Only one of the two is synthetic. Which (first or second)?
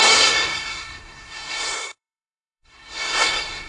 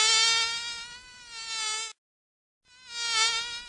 first